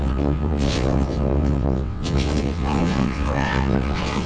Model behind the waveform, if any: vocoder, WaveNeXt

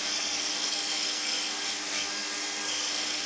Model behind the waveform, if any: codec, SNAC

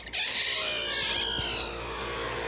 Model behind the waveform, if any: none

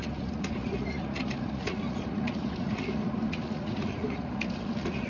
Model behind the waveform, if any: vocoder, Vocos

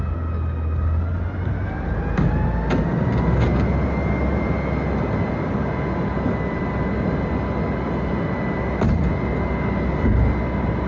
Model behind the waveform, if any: none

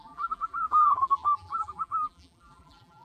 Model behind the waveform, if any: vocoder, BigVGAN v2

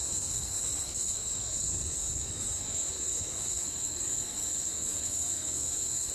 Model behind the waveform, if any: codec, SNAC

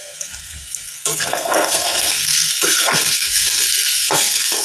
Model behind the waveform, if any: codec, SNAC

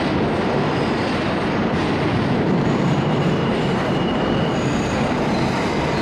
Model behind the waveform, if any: vocoder, BigVGAN v2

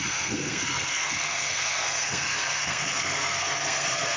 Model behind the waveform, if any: codec, SNAC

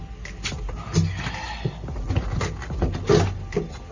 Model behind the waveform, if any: none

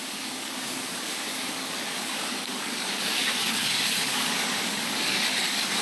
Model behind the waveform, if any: codec, DAC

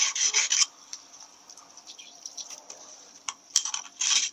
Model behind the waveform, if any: vocoder, BigVGAN v2